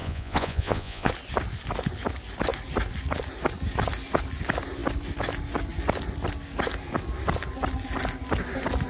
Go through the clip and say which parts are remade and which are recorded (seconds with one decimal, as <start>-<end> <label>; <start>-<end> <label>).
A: 0.0-1.1 remade; 1.1-8.9 recorded